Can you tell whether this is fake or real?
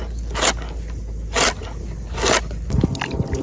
real